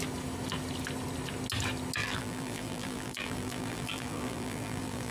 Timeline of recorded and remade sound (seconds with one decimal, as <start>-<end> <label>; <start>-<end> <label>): 0.0-2.0 recorded; 2.0-5.1 remade